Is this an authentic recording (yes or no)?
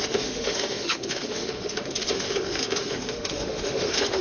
no